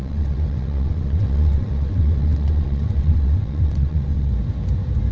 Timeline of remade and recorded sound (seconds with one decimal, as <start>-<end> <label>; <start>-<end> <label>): 0.0-4.3 remade; 4.3-5.1 recorded